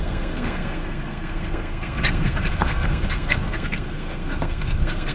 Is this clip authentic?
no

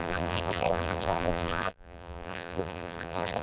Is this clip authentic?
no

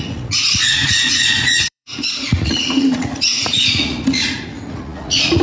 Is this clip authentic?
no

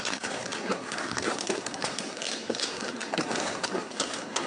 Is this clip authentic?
no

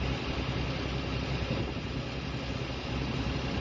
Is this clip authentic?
yes